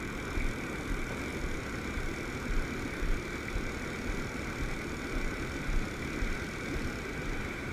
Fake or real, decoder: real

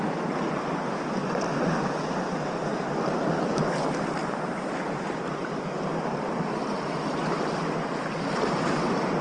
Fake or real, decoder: real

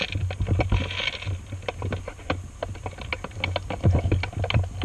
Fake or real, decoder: real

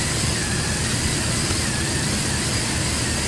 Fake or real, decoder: real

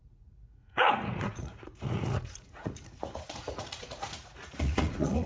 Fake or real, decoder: fake, vocoder, Vocos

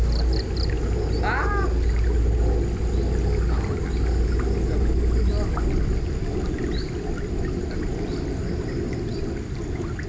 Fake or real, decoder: real